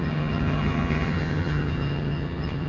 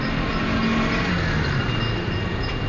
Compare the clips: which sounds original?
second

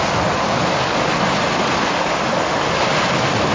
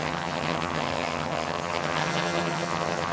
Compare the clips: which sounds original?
first